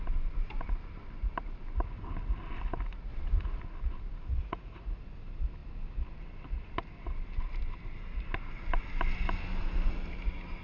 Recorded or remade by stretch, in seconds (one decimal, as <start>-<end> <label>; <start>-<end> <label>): 0.0-3.1 recorded; 3.1-3.6 remade; 3.6-4.4 recorded; 4.4-5.0 remade; 5.0-10.6 recorded